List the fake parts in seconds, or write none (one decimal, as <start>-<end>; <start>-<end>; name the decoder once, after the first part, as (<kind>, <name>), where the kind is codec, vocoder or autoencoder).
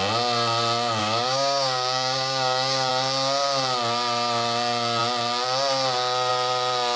1.0-2.9 (codec, DAC)